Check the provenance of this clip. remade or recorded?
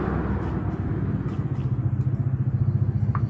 recorded